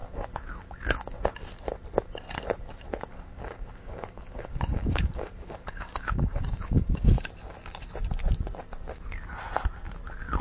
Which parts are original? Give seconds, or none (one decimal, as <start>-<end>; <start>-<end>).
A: 0.0-3.1; 7.2-10.4